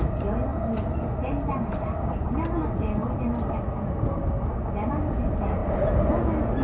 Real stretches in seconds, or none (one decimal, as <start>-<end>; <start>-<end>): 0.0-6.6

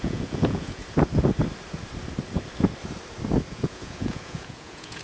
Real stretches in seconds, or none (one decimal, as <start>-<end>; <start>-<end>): 0.8-3.5

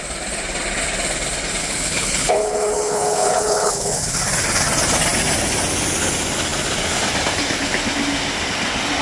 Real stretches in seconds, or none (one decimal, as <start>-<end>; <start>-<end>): 0.0-1.6; 4.2-9.0